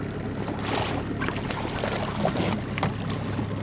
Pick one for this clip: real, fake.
real